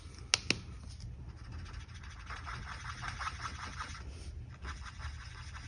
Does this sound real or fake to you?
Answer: real